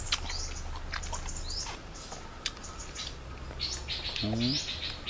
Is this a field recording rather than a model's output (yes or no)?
yes